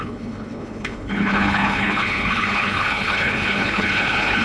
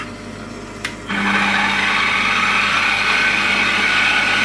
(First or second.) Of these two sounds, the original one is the second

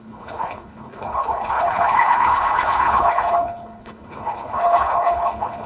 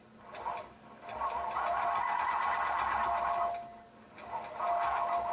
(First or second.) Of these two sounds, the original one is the second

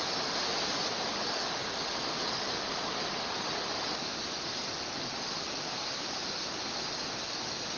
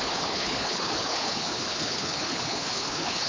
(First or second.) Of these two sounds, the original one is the first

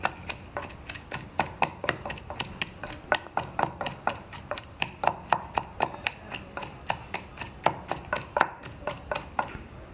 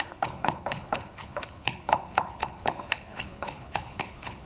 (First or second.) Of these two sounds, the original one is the first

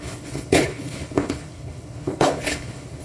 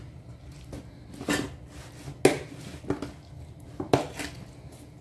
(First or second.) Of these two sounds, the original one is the second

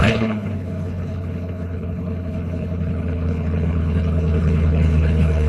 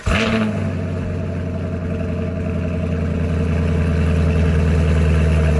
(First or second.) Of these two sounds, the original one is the second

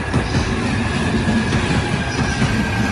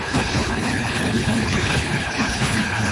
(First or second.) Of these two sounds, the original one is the first